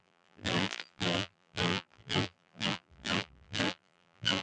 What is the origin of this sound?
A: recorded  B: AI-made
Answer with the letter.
B